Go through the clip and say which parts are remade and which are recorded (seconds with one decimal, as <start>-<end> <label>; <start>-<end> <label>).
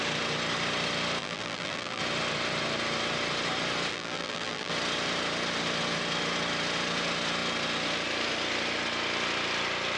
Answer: 0.0-1.2 recorded; 1.2-2.0 remade; 2.0-3.9 recorded; 3.9-4.7 remade; 4.7-10.0 recorded